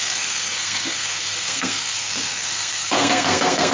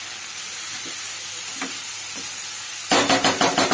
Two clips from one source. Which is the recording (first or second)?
second